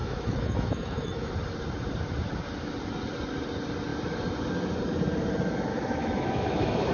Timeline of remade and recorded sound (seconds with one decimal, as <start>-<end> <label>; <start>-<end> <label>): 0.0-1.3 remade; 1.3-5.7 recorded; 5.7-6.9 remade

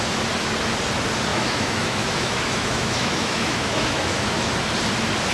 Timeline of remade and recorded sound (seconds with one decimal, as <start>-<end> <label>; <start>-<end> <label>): 0.0-1.3 recorded; 1.3-4.5 remade; 4.5-5.3 recorded

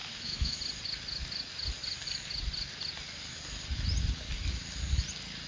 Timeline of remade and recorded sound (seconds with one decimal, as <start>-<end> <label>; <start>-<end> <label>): 0.0-0.6 remade; 0.6-5.5 recorded

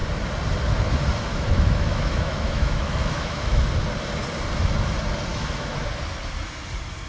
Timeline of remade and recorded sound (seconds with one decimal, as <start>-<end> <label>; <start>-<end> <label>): 0.0-1.3 recorded; 1.3-3.6 remade; 3.6-5.3 recorded; 5.3-5.8 remade; 5.8-7.1 recorded